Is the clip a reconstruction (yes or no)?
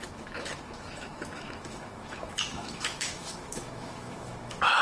yes